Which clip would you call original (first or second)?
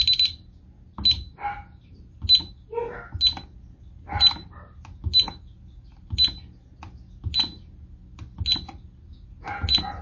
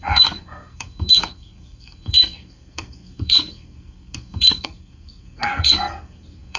first